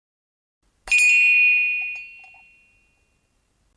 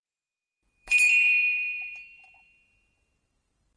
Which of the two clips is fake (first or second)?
second